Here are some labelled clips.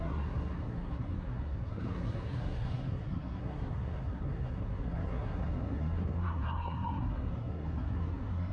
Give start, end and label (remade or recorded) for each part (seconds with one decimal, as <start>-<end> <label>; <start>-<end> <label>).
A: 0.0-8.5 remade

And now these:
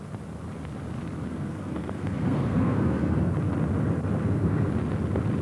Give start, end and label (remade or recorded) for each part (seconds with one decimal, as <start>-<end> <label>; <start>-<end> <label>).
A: 0.0-1.3 recorded; 1.3-3.3 remade; 3.3-4.2 recorded; 4.2-4.7 remade; 4.7-5.4 recorded

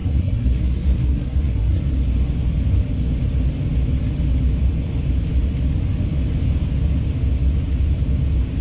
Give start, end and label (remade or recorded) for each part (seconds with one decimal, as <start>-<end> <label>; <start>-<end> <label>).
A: 0.0-1.8 remade; 1.8-8.6 recorded